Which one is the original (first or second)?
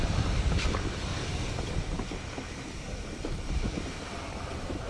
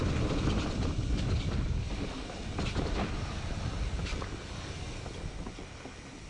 second